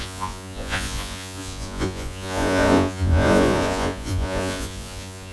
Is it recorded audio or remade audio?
remade